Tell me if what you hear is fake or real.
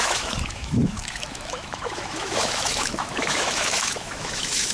fake